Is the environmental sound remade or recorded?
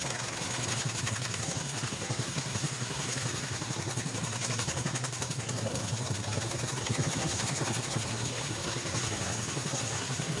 remade